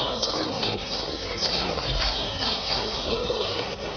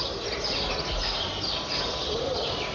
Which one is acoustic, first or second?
second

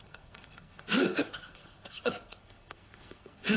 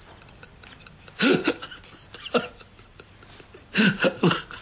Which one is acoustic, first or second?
second